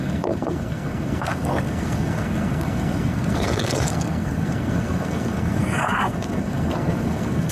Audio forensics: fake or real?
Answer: fake